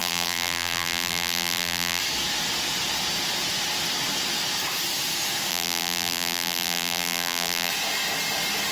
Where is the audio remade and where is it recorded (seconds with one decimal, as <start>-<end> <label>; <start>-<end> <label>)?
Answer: 0.0-2.0 remade; 2.0-5.5 recorded; 5.5-7.7 remade; 7.7-8.7 recorded